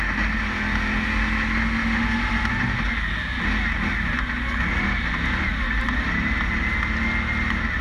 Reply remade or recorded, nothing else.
recorded